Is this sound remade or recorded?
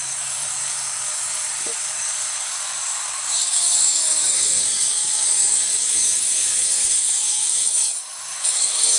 remade